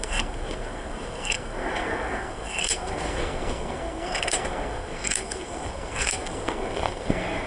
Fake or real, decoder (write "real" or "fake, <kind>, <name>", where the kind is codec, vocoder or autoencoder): fake, codec, SNAC